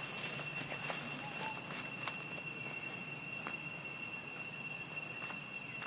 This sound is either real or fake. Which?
real